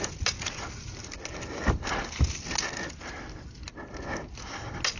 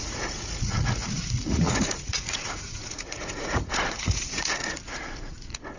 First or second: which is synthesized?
second